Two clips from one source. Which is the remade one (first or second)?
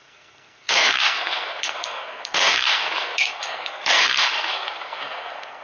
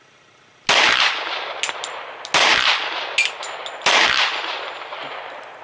first